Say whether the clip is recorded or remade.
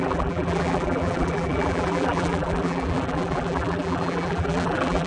remade